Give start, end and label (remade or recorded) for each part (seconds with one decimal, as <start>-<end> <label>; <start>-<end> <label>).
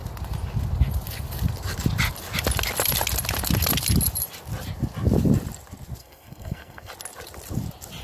0.0-6.0 recorded; 6.0-6.9 remade; 6.9-8.0 recorded